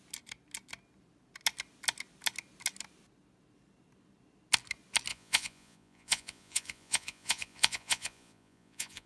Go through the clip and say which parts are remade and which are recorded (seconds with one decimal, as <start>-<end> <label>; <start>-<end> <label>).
0.0-5.1 recorded; 5.1-9.1 remade